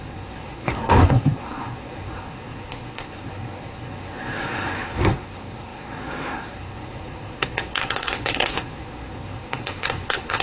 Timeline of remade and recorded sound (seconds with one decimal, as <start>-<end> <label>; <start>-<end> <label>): 0.0-10.4 remade